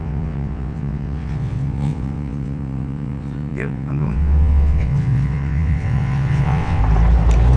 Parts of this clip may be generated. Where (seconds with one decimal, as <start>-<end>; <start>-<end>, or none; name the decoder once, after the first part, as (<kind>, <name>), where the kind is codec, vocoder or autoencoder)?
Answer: 0.0-6.8 (vocoder, WaveNeXt)